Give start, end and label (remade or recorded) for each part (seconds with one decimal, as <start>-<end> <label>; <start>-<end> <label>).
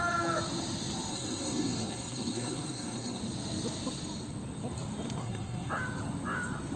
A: 0.0-1.1 recorded; 1.1-3.2 remade; 3.2-5.2 recorded; 5.2-5.7 remade; 5.7-6.8 recorded